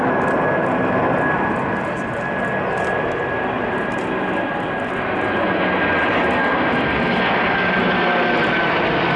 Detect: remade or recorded recorded